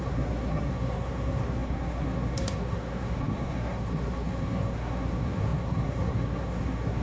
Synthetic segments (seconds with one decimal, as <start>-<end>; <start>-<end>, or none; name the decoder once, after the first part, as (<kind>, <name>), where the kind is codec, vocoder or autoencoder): 0.0-7.0 (codec, SNAC)